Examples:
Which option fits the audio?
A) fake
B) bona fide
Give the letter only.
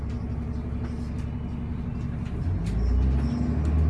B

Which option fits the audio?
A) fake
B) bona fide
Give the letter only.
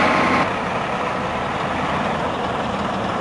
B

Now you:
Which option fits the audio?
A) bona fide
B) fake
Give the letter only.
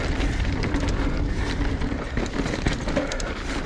A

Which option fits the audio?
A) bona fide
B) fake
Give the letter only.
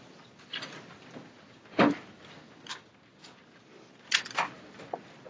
A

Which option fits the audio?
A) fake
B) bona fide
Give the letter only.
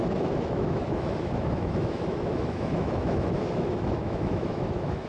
A